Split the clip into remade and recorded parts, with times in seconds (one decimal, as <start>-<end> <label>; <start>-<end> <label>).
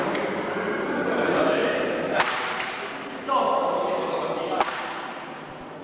0.0-1.6 remade; 1.6-5.1 recorded; 5.1-5.8 remade